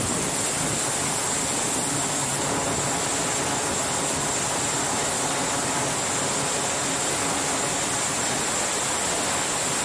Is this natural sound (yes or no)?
yes